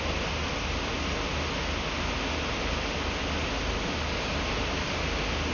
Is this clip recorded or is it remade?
recorded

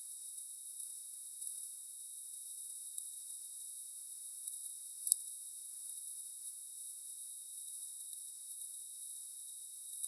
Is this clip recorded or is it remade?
remade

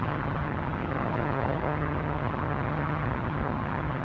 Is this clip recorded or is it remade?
remade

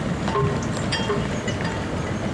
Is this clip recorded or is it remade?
recorded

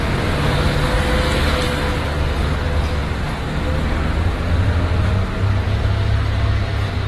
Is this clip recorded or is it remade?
recorded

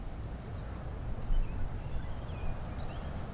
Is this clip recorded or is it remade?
recorded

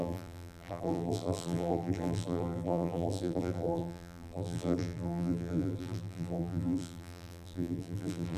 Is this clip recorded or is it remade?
remade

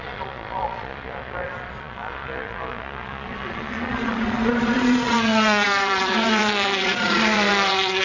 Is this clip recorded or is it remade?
remade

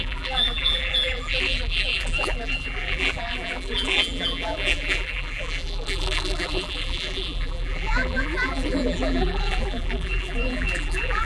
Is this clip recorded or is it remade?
remade